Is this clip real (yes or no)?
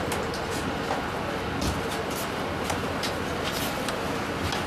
yes